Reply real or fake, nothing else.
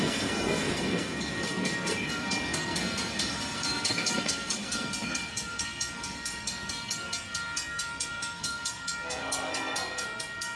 fake